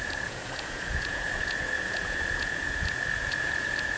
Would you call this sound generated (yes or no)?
yes